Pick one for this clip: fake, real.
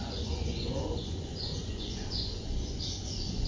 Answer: fake